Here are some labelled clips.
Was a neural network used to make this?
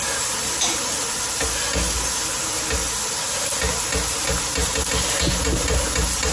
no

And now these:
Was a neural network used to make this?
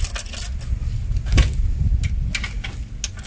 no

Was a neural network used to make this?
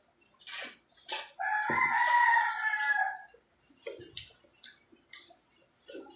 no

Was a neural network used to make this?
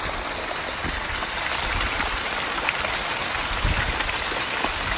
no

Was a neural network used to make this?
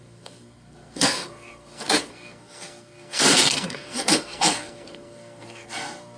yes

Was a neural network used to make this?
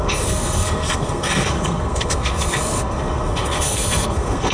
yes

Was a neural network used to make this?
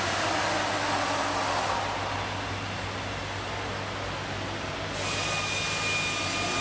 no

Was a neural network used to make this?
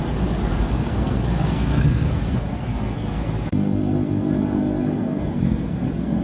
yes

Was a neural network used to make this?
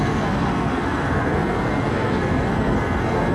yes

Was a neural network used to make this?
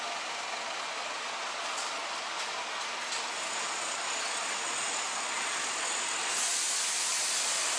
no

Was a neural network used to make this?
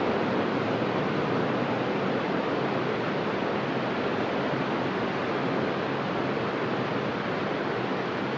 no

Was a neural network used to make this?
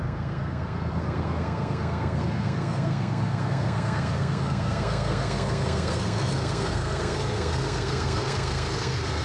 yes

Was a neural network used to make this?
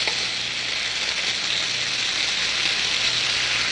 no